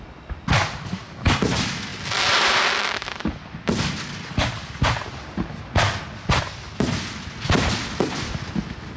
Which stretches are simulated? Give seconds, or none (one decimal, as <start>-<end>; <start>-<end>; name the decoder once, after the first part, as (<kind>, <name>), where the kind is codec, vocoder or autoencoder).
none